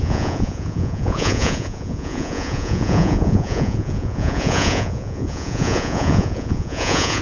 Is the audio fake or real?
fake